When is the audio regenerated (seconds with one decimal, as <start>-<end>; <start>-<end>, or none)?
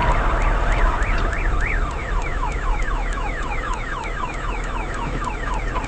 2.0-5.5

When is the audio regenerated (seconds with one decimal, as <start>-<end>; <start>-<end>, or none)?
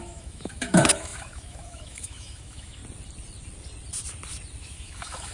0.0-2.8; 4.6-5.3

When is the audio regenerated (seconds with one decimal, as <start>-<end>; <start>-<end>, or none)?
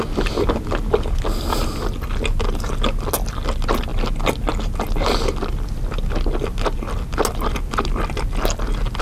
none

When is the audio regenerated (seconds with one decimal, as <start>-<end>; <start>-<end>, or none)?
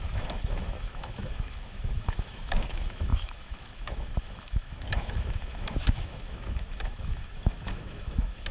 0.0-8.5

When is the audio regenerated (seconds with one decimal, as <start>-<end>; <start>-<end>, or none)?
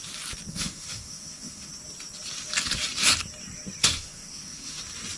0.5-1.7; 3.8-4.8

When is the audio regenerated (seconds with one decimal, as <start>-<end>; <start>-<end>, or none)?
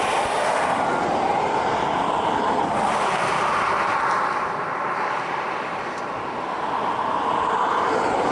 none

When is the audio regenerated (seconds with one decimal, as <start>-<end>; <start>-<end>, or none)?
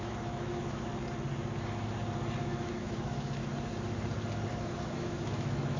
0.0-0.9; 2.4-3.4; 4.5-5.8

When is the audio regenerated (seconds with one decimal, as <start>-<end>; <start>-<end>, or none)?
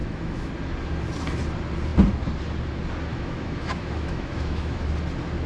0.0-0.5; 3.1-4.9